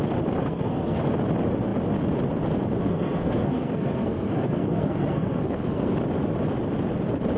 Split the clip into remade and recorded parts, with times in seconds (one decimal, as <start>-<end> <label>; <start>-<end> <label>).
0.0-0.4 recorded; 0.4-1.0 remade; 1.0-2.8 recorded; 2.8-5.9 remade; 5.9-7.4 recorded